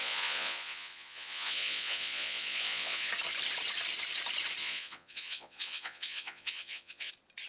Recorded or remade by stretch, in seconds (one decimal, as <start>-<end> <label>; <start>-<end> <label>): 0.0-3.1 remade; 3.1-4.6 recorded; 4.6-7.1 remade; 7.1-7.5 recorded